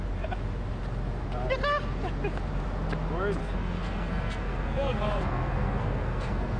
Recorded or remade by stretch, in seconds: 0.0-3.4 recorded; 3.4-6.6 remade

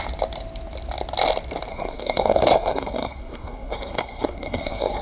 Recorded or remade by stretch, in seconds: 0.0-1.7 recorded; 1.7-5.0 remade

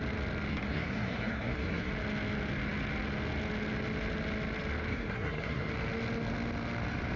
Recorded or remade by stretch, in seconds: 0.0-0.5 recorded; 0.5-1.9 remade; 1.9-4.9 recorded; 4.9-5.7 remade; 5.7-7.2 recorded